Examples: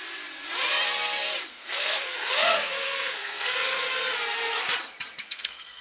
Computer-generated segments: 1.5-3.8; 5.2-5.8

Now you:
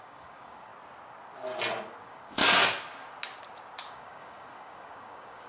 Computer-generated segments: 0.0-0.7; 2.0-2.4; 3.9-5.5

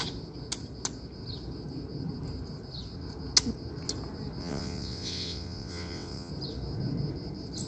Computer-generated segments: 4.4-6.3

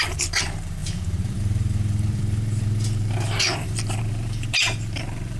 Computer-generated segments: 0.0-5.4

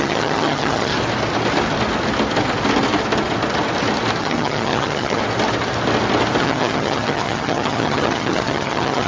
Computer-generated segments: 0.0-0.9; 4.2-5.2; 6.4-9.1

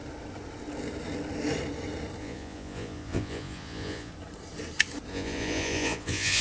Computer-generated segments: 2.2-4.1; 5.1-6.4

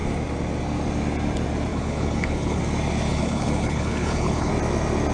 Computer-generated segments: 1.7-2.6; 3.1-4.5

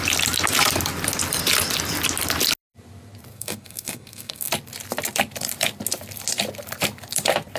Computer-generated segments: 3.3-4.5